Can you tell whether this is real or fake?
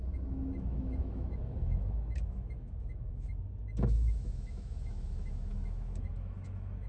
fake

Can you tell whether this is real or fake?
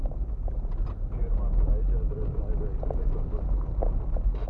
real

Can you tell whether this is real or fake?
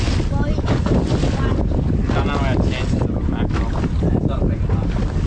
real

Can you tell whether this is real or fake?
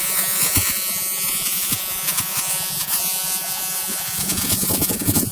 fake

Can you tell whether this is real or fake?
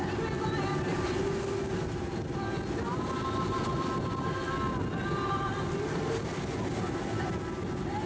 real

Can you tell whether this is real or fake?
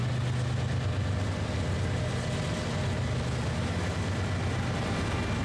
real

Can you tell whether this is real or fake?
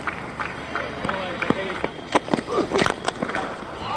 fake